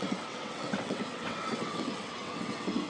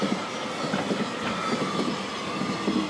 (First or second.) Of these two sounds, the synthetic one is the first